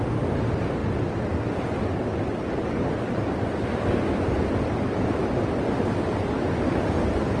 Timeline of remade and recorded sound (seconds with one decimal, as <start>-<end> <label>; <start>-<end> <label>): 0.0-7.4 recorded